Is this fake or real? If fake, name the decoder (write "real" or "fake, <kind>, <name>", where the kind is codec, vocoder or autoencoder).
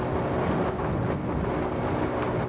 real